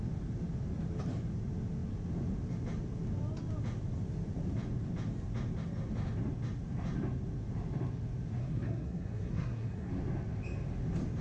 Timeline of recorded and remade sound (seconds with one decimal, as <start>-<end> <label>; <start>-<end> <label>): 0.0-8.4 recorded; 8.4-9.9 remade; 9.9-11.2 recorded